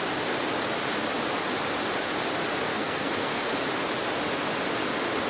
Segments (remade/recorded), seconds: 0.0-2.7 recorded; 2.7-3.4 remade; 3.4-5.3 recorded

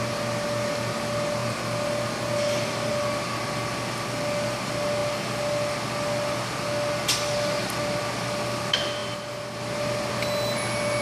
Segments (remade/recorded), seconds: 0.0-11.0 recorded

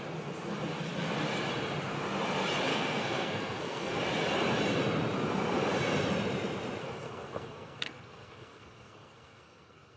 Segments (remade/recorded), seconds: 0.0-2.7 recorded; 2.7-4.0 remade; 4.0-6.8 recorded; 6.8-10.0 remade